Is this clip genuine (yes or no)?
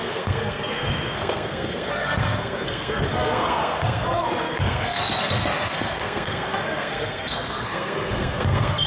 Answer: no